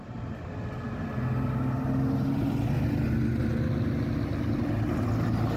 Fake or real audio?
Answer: real